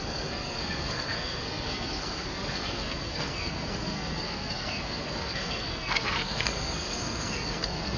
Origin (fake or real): fake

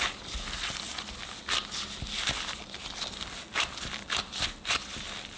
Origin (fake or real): real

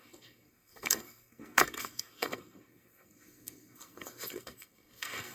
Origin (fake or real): fake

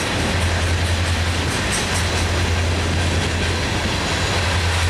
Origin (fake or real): real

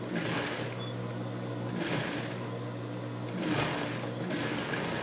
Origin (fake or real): real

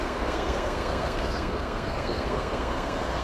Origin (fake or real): fake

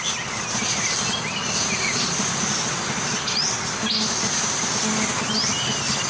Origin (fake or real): real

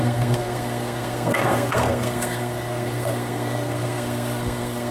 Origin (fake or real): fake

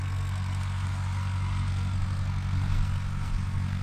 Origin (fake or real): fake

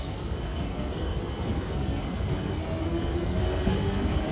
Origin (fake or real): fake